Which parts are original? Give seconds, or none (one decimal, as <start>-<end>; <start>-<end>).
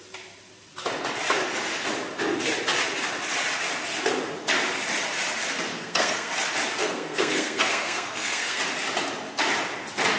0.0-5.7; 6.3-6.8; 8.6-10.2